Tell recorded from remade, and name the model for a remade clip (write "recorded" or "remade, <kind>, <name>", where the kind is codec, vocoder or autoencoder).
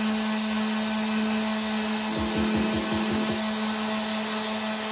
recorded